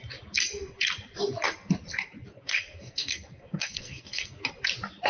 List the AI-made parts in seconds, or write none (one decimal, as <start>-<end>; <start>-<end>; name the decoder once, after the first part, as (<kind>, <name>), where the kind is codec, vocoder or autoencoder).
2.3-4.4 (codec, SNAC)